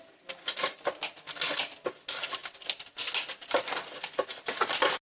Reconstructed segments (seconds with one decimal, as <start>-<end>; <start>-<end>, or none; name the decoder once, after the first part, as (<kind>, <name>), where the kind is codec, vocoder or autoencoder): none